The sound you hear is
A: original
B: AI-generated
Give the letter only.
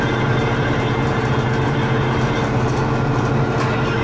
B